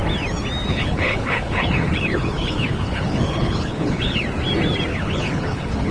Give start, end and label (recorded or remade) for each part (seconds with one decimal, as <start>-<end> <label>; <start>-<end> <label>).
0.0-0.7 recorded; 0.7-4.2 remade; 4.2-4.9 recorded; 4.9-5.9 remade